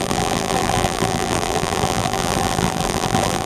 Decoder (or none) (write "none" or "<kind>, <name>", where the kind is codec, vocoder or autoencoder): vocoder, BigVGAN v2